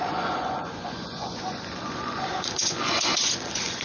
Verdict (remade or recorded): remade